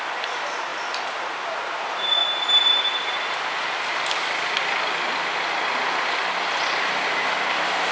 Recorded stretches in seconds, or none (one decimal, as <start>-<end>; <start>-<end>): 0.0-7.9